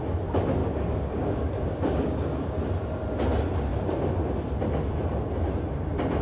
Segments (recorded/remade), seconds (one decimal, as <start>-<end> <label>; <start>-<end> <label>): 0.0-0.6 recorded; 0.6-2.6 remade; 2.6-6.2 recorded